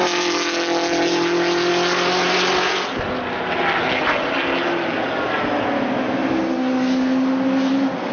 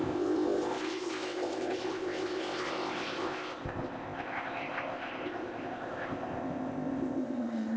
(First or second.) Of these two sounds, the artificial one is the second